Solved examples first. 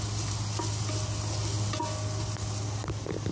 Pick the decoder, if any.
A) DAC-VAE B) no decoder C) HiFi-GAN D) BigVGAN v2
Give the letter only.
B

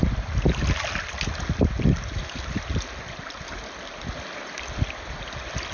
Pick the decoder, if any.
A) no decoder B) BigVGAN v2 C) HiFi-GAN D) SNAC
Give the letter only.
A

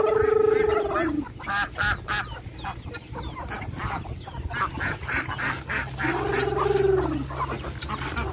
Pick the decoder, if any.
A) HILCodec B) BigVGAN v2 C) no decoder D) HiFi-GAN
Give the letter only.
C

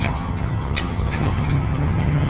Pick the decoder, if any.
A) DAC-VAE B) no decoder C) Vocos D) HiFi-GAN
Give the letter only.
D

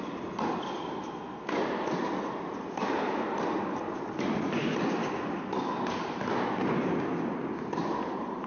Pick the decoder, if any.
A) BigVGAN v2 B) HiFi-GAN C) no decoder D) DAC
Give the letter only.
C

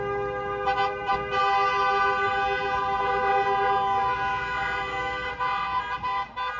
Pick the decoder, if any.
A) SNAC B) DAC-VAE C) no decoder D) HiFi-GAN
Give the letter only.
C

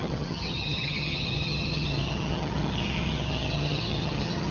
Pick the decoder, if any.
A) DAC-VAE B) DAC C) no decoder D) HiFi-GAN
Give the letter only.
D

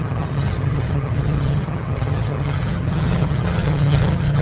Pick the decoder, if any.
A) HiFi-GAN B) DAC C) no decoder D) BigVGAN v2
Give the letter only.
A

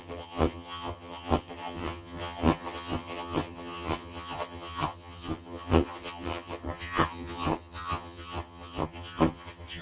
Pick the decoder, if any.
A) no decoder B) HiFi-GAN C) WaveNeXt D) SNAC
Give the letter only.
B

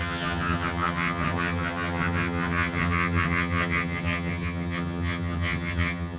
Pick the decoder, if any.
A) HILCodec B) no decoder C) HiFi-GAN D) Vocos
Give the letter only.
C